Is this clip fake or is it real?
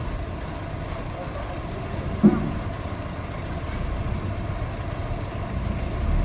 real